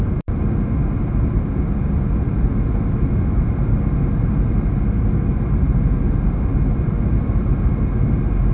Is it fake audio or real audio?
real